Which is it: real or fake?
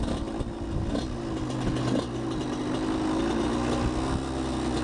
real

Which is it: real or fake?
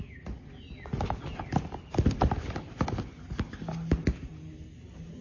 real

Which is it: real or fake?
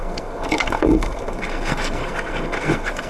fake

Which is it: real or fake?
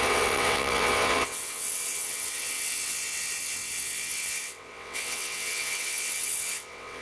fake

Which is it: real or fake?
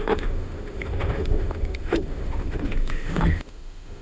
fake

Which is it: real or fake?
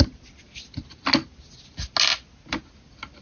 real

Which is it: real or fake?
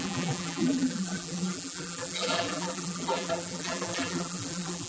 fake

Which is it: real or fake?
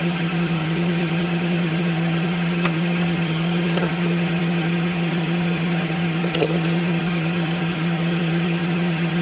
fake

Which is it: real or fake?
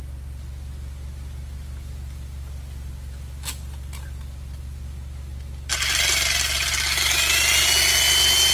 real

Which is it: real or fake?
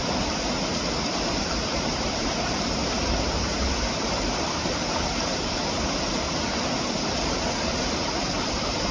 fake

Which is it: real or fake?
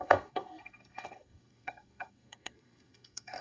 fake